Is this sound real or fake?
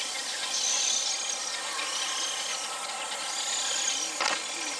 real